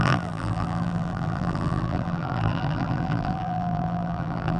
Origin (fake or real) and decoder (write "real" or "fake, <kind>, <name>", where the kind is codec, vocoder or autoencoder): fake, vocoder, BigVGAN v2